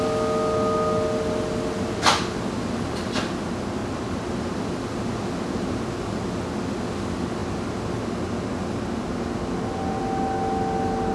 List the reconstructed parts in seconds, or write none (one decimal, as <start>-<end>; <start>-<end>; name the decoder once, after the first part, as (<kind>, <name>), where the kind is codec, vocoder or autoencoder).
none